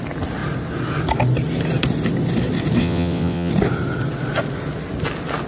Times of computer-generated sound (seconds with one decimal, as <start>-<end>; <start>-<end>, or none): 2.8-3.5